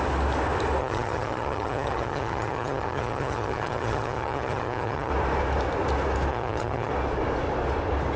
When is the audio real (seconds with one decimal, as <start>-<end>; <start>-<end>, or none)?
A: 0.0-0.8; 5.1-6.3; 6.9-8.2